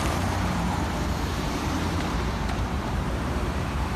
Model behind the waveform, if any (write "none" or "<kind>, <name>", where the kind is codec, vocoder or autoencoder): vocoder, BigVGAN v2